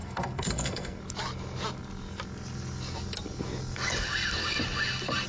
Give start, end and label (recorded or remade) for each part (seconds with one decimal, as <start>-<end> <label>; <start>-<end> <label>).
0.0-1.0 remade; 1.0-5.3 recorded